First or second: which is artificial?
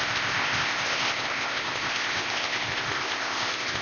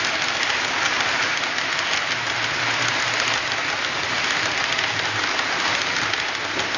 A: first